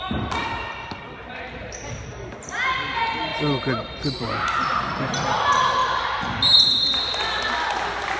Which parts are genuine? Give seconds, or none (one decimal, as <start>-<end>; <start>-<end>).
0.0-5.8; 6.5-8.2